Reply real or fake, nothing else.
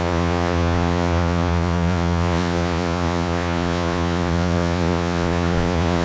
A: fake